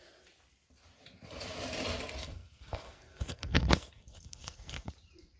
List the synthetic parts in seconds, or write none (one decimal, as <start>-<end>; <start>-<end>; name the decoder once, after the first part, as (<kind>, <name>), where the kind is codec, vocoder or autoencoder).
2.2-4.9 (codec, SNAC)